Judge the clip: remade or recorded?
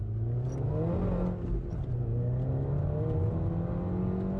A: recorded